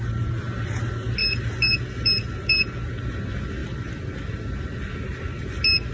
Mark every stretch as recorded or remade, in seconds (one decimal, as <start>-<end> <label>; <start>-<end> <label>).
0.0-5.9 recorded